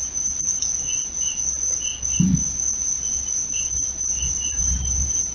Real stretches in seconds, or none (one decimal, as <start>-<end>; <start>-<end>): 0.5-3.7